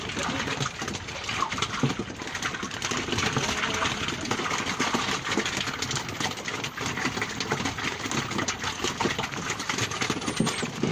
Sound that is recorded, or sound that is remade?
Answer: recorded